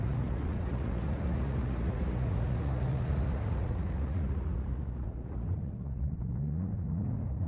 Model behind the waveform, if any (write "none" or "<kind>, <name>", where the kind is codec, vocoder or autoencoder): vocoder, Vocos